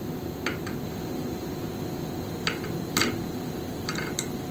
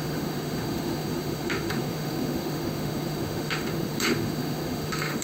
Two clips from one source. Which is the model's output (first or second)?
second